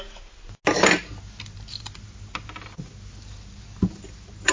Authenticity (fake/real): real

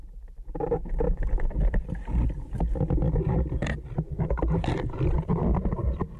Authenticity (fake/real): real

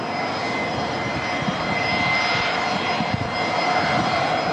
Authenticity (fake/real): real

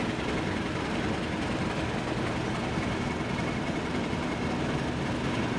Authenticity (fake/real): real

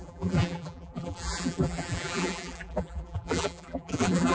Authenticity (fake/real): fake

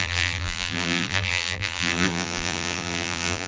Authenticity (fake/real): fake